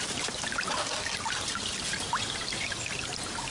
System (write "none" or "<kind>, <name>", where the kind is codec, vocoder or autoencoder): none